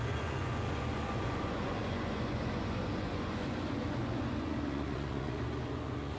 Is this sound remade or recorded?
remade